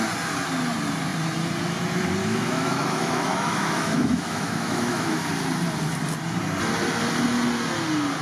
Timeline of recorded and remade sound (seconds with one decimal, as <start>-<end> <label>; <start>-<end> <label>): 0.0-2.2 recorded; 2.2-5.3 remade; 5.3-8.2 recorded